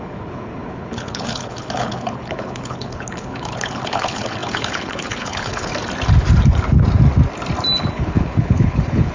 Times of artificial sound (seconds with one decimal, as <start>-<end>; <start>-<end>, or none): 0.0-5.7; 7.9-9.1